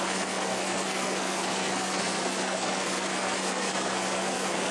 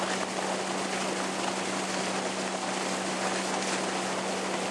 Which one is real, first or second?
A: second